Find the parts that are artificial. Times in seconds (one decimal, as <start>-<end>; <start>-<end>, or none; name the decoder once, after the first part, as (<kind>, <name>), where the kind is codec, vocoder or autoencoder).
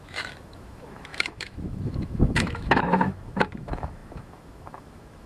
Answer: 0.0-5.3 (autoencoder, DAC-VAE)